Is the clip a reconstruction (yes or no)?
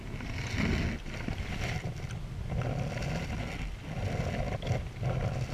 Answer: no